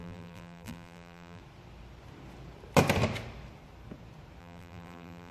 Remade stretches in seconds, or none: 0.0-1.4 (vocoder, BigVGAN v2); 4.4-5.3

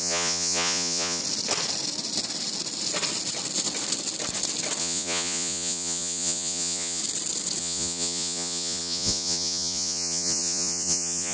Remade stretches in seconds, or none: 0.0-1.2 (vocoder, Vocos); 4.8-7.0; 7.6-11.3

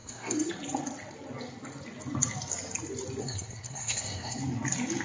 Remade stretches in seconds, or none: 0.0-0.5 (codec, SNAC); 3.2-4.4

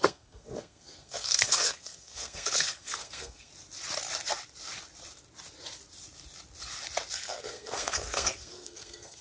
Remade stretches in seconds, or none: 0.0-3.5 (codec, SNAC); 7.1-9.2

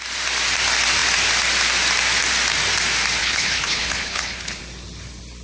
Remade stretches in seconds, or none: 3.2-4.6 (codec, HILCodec)